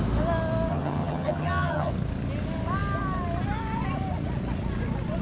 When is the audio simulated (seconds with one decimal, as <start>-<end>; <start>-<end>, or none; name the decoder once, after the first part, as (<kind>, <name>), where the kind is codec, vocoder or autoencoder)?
0.7-1.9 (vocoder, HiFi-GAN)